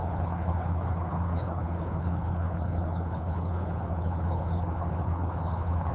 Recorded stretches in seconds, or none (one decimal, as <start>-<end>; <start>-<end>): none

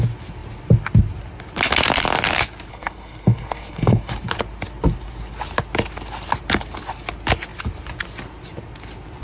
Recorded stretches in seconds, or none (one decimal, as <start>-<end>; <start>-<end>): 0.0-2.7; 4.1-9.2

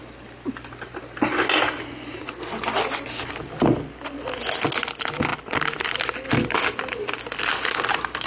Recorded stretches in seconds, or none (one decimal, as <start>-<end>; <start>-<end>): 0.0-5.3; 7.2-8.3

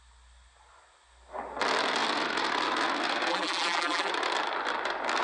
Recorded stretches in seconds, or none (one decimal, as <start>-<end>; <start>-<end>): 0.0-3.3; 4.1-5.2

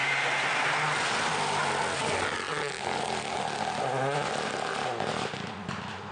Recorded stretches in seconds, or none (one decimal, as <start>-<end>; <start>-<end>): 0.0-6.1